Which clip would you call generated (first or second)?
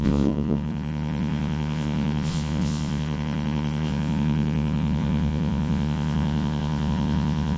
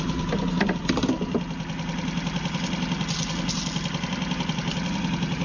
first